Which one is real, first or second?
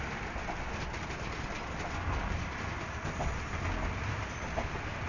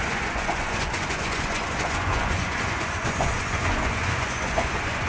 first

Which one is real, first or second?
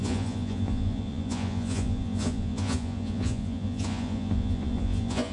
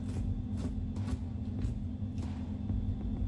second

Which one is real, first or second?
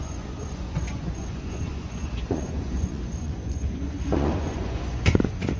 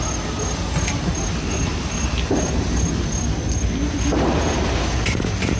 second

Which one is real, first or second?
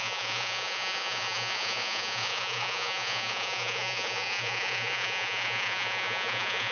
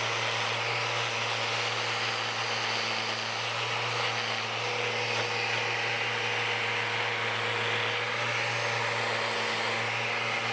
second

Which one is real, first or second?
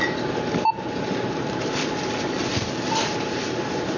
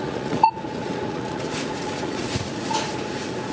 first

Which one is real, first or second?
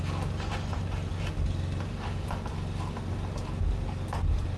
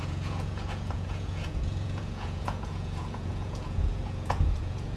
first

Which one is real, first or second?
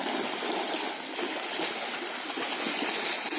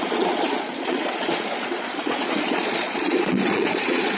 first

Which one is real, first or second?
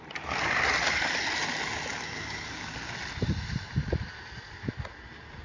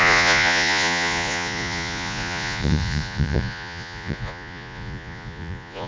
first